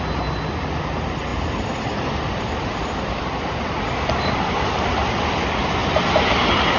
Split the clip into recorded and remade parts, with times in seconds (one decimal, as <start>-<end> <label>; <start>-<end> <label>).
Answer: 0.0-5.8 remade; 5.8-6.8 recorded